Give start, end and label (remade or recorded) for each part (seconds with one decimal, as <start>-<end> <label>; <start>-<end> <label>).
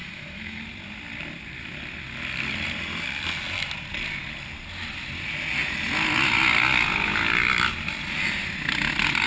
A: 0.0-0.6 remade; 0.6-9.3 recorded